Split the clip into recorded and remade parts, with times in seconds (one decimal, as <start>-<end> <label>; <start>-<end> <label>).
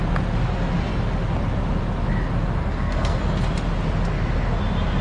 0.0-2.6 recorded; 2.6-3.2 remade; 3.2-5.0 recorded